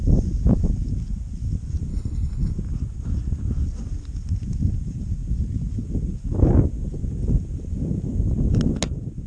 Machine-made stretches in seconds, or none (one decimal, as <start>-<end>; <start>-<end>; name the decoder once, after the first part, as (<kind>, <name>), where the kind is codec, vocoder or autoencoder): 1.9-2.5 (codec, HILCodec)